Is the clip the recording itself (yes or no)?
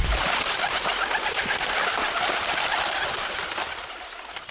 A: yes